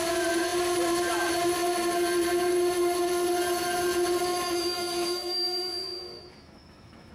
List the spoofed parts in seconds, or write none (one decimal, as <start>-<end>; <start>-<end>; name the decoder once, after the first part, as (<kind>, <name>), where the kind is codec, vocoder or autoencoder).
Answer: 4.3-7.1 (autoencoder, DAC-VAE)